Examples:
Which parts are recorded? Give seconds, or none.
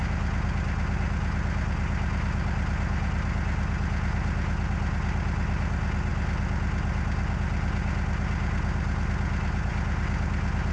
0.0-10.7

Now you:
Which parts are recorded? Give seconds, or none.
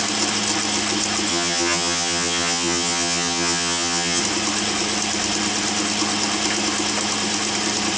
0.0-1.3; 4.2-8.0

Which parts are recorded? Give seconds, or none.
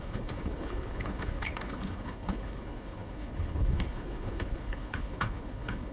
none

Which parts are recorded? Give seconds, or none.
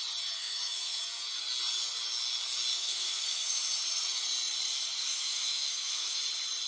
0.0-0.4; 1.0-2.7; 3.8-5.1; 6.2-6.7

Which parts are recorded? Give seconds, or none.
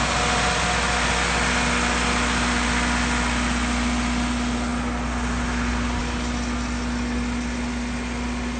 0.0-8.6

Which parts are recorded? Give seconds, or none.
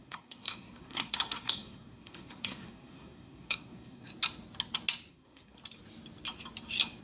4.1-5.1; 5.6-7.0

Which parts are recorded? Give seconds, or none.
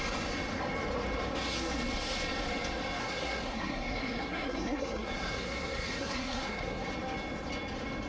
0.0-3.0; 6.9-8.1